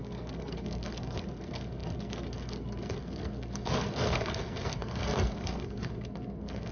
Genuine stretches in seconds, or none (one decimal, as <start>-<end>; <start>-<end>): none